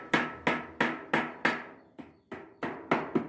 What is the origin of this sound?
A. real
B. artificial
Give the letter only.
A